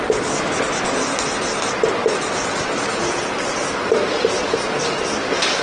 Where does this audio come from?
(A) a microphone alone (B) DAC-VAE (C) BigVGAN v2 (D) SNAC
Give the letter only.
A